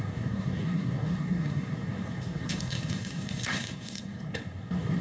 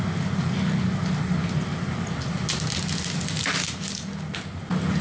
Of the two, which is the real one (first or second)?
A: second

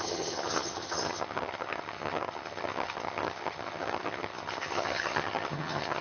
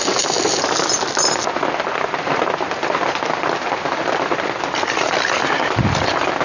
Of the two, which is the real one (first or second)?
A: second